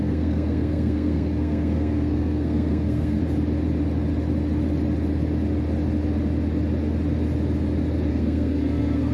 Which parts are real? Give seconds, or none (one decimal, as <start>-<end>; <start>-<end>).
3.2-8.1